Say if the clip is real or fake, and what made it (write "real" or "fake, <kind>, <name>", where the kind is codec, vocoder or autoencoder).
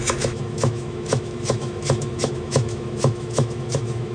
fake, autoencoder, DAC-VAE